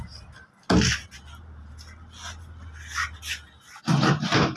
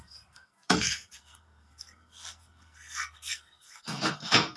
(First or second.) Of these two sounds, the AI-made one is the second